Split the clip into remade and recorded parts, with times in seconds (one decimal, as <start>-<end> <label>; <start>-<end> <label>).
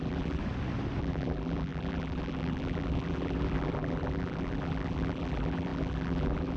0.0-0.4 remade; 0.4-1.0 recorded; 1.0-6.6 remade